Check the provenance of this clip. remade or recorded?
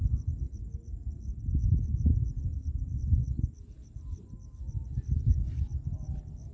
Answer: recorded